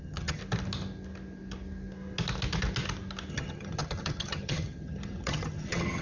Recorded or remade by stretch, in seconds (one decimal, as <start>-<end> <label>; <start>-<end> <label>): 0.0-0.4 remade; 0.4-3.3 recorded; 3.3-6.0 remade